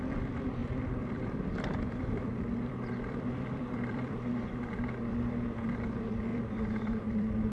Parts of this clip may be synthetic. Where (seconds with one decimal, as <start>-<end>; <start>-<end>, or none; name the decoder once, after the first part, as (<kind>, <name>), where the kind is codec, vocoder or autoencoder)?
0.6-4.6 (vocoder, BigVGAN v2); 5.1-5.8; 6.3-7.5